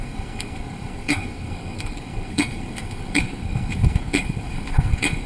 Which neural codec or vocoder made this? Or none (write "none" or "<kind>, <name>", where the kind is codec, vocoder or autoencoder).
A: codec, SNAC